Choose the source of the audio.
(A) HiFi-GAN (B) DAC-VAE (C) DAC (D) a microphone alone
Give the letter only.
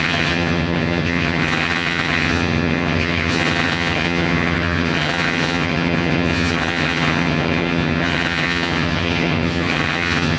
A